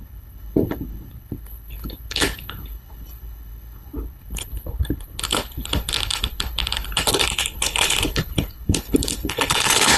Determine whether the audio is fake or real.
fake